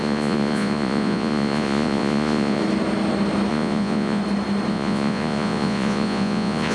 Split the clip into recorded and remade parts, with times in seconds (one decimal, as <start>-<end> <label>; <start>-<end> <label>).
0.0-2.6 remade; 2.6-3.5 recorded; 3.5-4.2 remade; 4.2-4.7 recorded; 4.7-6.7 remade